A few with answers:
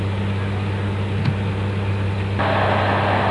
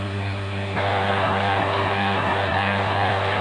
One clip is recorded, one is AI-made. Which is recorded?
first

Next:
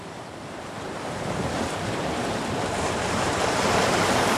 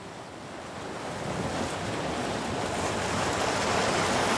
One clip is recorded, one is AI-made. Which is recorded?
second